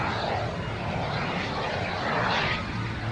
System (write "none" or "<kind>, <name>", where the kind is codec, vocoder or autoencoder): none